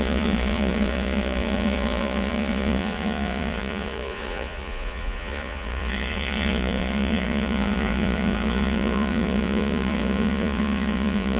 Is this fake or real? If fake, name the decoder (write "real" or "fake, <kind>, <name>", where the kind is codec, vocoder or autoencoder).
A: fake, vocoder, Vocos